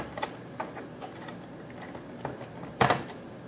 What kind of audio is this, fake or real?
real